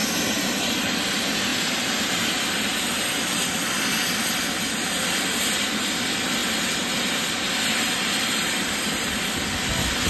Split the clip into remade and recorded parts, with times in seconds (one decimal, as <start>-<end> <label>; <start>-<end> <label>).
0.0-10.1 recorded